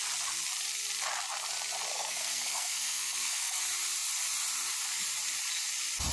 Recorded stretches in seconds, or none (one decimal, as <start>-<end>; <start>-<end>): 0.0-1.9; 3.6-6.1